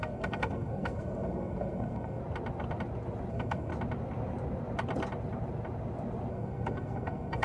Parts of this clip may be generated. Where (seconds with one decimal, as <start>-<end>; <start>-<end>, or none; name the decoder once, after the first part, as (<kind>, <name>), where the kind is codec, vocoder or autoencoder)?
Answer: 0.0-2.2 (codec, SNAC); 3.3-3.7; 6.3-7.4